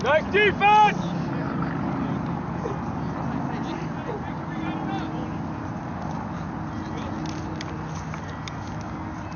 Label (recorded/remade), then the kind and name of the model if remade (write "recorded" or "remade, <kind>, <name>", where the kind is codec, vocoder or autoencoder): recorded